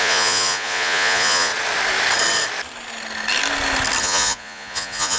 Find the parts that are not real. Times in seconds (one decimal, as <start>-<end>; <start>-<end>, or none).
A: 0.0-1.5; 4.0-5.2